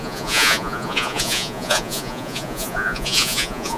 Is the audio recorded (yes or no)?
no